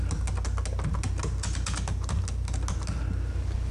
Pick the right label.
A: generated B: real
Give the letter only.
B